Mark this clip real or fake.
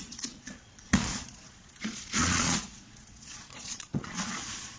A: fake